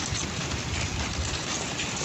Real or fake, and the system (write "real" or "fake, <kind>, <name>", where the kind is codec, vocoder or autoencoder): real